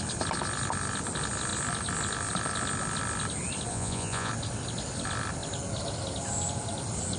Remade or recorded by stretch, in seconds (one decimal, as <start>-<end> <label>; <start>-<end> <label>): 0.0-3.7 recorded; 3.7-4.3 remade; 4.3-7.2 recorded